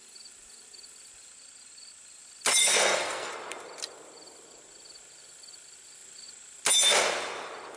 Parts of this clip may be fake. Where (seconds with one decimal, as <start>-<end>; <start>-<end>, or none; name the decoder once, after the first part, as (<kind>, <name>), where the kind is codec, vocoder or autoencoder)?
2.6-3.3 (codec, SNAC)